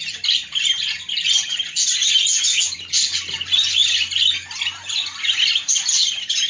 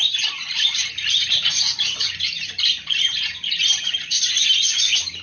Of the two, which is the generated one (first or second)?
second